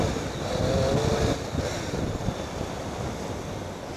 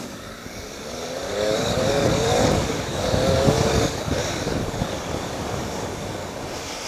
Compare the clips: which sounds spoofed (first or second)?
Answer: second